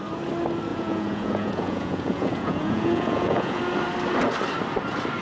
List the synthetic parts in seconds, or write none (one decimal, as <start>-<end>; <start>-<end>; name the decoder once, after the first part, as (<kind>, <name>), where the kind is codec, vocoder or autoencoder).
0.7-3.6 (vocoder, Vocos)